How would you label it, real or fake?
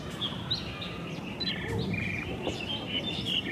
real